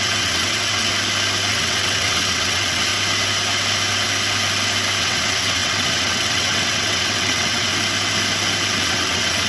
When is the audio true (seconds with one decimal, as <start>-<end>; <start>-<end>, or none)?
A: 0.9-1.5; 2.9-5.0; 7.7-8.8